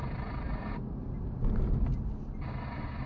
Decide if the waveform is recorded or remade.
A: recorded